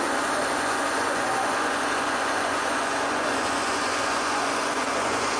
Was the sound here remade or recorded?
remade